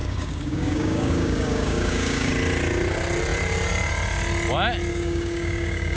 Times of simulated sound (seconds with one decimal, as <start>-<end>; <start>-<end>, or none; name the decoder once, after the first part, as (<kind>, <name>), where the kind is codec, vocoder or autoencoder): 0.0-2.3 (codec, DAC); 4.9-6.0

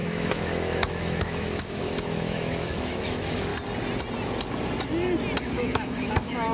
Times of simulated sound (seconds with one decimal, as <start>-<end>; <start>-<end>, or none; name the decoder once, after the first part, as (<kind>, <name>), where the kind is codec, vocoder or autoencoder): 0.0-3.5 (autoencoder, DAC-VAE); 5.4-6.5

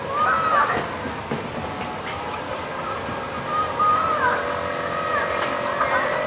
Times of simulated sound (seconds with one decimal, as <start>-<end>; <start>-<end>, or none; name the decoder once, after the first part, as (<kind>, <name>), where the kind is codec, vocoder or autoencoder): none

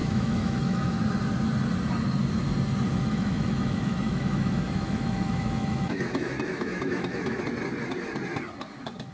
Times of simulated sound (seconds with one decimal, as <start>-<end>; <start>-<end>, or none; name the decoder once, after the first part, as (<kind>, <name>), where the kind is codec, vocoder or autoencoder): 0.0-1.0 (autoencoder, DAC-VAE); 2.9-7.4

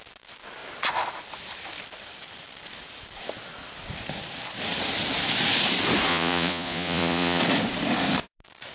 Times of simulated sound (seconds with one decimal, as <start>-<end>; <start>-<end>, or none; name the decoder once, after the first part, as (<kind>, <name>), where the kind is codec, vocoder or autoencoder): 6.1-7.4 (vocoder, Vocos)

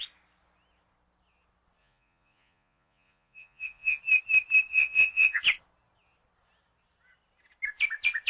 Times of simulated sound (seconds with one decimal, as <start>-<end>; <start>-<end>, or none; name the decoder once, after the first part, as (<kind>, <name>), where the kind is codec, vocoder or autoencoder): 1.8-4.0 (vocoder, Vocos); 4.7-5.4